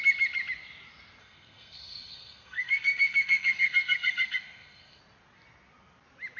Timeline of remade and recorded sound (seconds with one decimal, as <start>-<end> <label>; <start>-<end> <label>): 0.0-1.2 recorded; 1.2-5.0 remade; 5.0-6.4 recorded